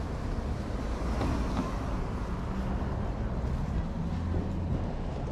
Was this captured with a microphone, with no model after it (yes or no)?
yes